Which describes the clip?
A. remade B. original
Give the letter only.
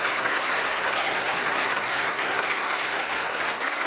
A